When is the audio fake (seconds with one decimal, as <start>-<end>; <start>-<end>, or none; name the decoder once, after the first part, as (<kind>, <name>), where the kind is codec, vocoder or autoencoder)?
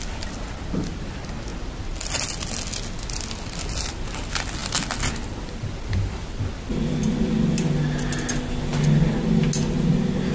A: none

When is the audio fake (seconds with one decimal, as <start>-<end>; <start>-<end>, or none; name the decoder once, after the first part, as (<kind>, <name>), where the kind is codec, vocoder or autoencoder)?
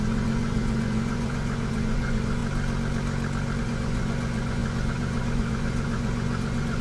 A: 0.0-2.4 (vocoder, Vocos); 3.6-6.8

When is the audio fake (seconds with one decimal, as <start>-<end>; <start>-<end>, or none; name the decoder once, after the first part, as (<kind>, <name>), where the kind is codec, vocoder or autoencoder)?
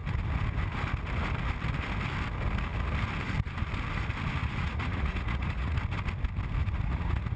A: 4.4-5.8 (vocoder, Vocos); 6.6-7.4